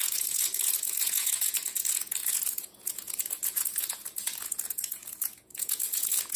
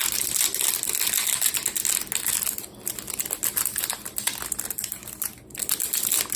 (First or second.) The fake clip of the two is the first